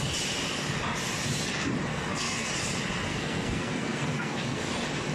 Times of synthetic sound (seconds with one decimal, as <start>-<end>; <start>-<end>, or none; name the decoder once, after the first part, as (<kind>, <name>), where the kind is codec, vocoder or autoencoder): 1.9-2.5 (codec, SNAC); 3.1-4.6